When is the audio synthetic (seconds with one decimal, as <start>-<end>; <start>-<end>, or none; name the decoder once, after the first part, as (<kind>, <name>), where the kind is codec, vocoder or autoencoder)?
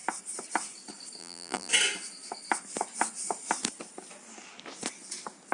1.2-1.7 (vocoder, BigVGAN v2)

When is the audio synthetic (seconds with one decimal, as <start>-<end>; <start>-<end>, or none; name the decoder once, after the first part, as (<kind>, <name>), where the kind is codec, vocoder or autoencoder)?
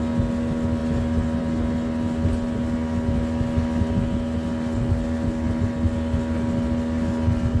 none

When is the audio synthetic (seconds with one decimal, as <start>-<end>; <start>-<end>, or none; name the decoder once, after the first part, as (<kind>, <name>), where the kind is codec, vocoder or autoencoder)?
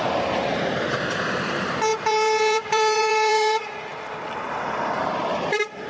0.0-5.9 (vocoder, BigVGAN v2)